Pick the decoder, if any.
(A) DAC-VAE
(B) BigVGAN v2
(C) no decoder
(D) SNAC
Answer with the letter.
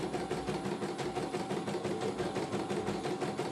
C